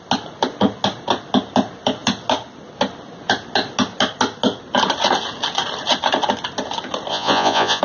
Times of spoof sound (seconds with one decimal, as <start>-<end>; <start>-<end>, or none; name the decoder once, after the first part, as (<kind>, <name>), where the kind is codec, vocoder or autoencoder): 7.1-7.8 (vocoder, Vocos)